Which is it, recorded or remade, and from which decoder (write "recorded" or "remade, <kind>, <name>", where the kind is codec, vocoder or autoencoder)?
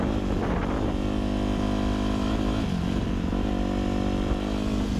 recorded